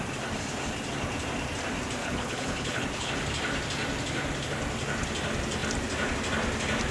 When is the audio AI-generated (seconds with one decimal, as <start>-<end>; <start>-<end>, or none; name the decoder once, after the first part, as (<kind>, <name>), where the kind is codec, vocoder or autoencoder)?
2.0-3.1 (codec, HILCodec)